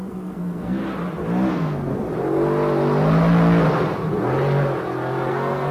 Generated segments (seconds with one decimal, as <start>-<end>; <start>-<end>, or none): 0.0-0.8; 1.5-1.9; 5.3-5.7

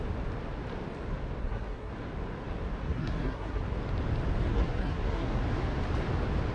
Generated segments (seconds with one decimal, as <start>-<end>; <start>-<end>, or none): 1.4-1.9; 2.8-3.6; 4.5-5.4

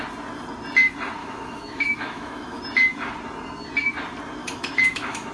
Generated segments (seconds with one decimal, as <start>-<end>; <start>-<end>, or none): 1.2-2.6; 4.4-5.3

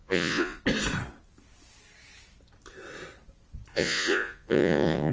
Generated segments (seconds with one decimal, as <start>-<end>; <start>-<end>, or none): 0.0-0.6; 3.7-5.1

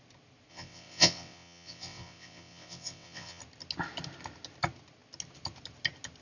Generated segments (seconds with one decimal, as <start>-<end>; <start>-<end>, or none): 0.5-3.4